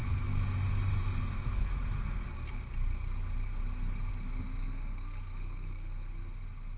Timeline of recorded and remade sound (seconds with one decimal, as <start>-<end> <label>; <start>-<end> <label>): 0.0-4.6 recorded; 4.6-6.1 remade; 6.1-6.8 recorded